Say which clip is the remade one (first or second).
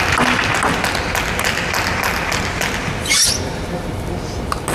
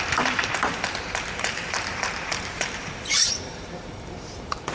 second